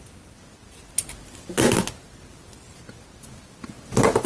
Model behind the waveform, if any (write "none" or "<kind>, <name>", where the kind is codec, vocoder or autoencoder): none